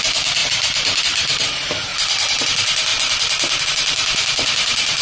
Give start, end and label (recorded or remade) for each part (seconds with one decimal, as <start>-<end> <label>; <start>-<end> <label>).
0.0-1.9 remade; 1.9-2.4 recorded; 2.4-5.0 remade